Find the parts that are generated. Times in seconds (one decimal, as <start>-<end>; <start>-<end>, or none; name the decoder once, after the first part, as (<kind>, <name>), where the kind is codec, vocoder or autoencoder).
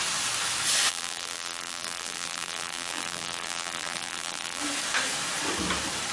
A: 0.9-4.6 (vocoder, BigVGAN v2)